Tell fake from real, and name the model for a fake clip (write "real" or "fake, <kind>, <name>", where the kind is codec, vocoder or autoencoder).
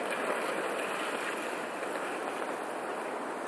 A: real